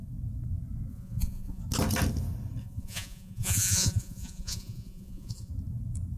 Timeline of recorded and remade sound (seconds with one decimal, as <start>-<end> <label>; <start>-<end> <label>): 0.0-0.9 recorded; 0.9-1.6 remade; 1.6-2.6 recorded; 2.6-5.5 remade; 5.5-6.2 recorded